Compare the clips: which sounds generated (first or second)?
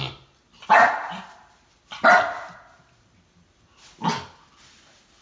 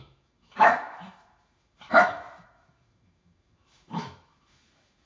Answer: second